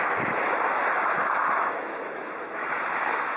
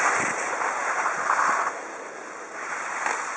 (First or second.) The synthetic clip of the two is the first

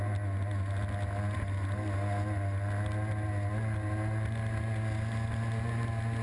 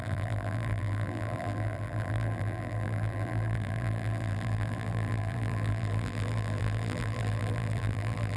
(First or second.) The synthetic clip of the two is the second